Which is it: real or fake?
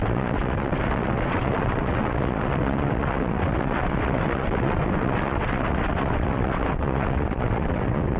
fake